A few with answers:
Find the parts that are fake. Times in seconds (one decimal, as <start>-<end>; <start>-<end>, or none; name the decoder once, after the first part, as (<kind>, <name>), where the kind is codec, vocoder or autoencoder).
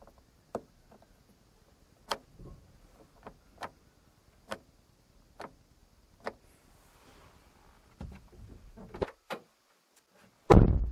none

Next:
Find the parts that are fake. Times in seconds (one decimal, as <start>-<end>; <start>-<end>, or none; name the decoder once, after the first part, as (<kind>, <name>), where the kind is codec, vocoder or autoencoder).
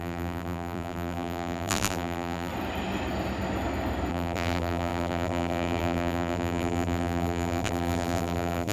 0.0-2.5 (vocoder, BigVGAN v2); 4.1-8.7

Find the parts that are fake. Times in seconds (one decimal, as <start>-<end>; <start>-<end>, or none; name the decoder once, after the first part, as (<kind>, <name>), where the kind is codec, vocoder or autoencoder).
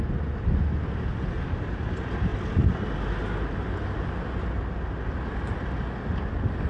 none